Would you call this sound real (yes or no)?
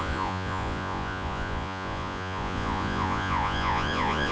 no